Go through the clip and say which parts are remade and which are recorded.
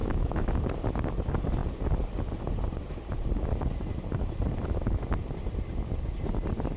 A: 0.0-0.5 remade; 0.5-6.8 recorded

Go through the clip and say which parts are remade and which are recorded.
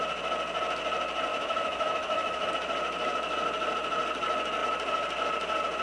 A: 0.0-1.3 recorded; 1.3-2.5 remade; 2.5-5.8 recorded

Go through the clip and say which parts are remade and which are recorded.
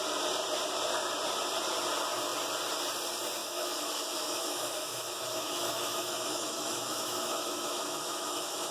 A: 0.0-3.4 recorded; 3.4-8.7 remade